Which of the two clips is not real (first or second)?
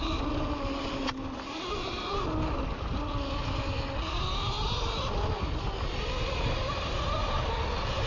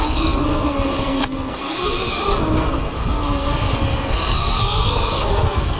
second